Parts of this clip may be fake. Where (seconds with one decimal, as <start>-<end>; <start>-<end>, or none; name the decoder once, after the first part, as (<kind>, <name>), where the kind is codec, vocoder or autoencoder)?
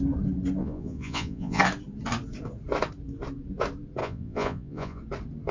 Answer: 0.6-1.6 (vocoder, Vocos); 4.0-5.0